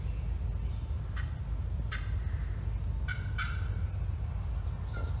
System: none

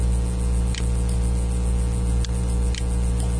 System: none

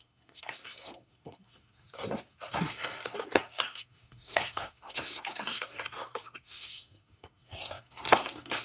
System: codec, SNAC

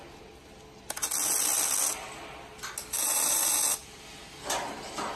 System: none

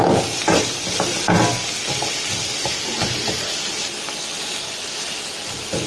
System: none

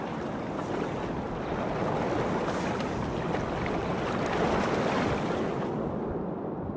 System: none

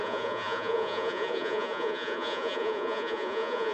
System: vocoder, Vocos